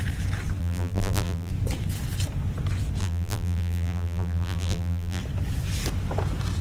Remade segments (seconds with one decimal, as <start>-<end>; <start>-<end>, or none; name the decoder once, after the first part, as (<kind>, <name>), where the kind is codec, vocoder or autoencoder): 0.6-1.5 (vocoder, BigVGAN v2); 3.0-5.2